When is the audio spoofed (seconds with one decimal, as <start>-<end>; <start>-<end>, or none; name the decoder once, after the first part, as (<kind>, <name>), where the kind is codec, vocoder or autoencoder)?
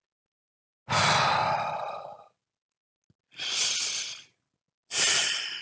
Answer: none